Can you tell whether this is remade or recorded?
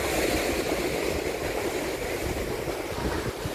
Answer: recorded